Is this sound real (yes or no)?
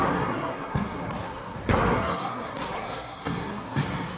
no